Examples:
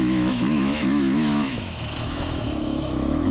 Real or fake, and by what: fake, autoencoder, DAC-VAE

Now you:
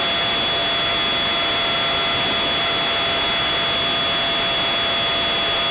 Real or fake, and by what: real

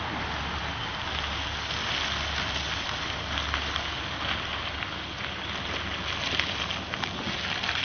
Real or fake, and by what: real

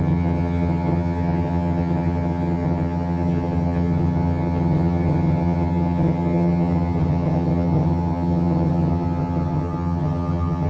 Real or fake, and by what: fake, vocoder, HiFi-GAN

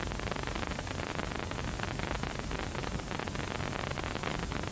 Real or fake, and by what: real